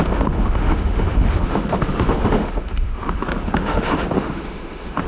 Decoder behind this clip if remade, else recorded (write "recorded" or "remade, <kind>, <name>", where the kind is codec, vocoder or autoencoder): remade, autoencoder, DAC-VAE